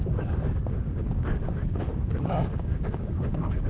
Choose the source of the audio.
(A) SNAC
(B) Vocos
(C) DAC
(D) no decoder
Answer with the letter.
C